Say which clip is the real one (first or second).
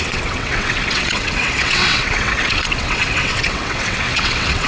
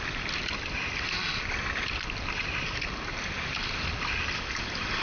second